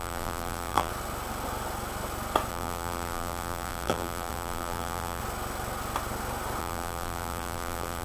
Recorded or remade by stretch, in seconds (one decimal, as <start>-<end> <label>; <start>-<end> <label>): 0.0-0.9 remade; 0.9-2.5 recorded; 2.5-5.2 remade; 5.2-6.6 recorded; 6.6-8.0 remade